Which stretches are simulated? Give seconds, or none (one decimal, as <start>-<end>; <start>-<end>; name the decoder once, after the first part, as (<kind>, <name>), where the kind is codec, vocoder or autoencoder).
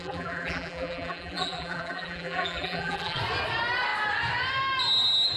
0.0-3.2 (vocoder, BigVGAN v2)